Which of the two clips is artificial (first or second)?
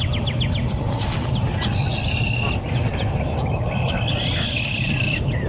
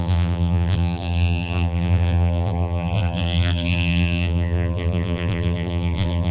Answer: second